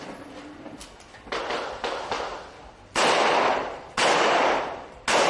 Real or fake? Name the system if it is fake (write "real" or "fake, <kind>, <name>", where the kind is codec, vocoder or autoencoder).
real